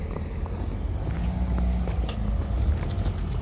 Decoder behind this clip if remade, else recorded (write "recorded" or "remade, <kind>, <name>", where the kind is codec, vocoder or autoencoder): recorded